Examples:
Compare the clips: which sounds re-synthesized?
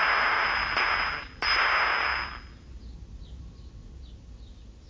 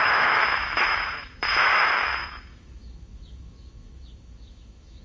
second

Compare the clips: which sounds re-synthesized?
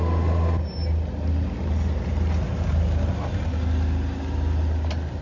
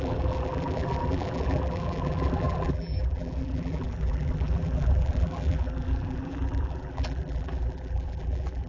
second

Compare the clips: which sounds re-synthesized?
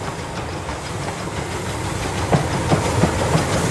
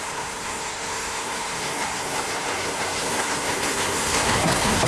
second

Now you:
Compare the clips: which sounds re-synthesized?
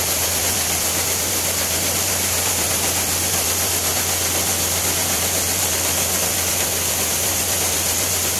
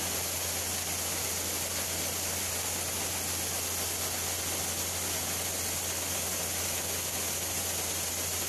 first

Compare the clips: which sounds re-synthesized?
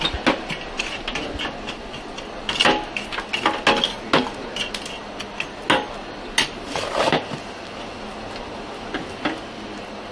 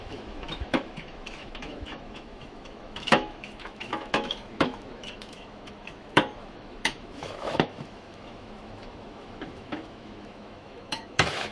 second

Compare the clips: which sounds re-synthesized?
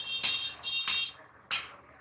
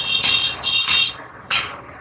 second